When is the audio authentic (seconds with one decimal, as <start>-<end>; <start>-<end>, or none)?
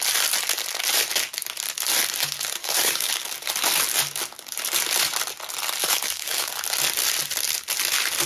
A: 0.0-2.6; 3.1-5.8; 6.5-8.3